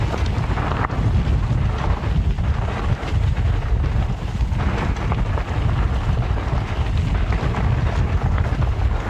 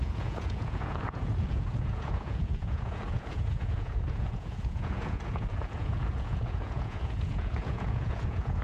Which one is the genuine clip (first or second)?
first